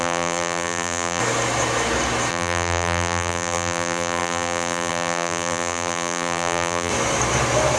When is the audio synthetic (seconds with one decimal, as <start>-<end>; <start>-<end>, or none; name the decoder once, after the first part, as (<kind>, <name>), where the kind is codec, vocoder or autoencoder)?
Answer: 0.0-1.2 (vocoder, BigVGAN v2); 2.3-6.9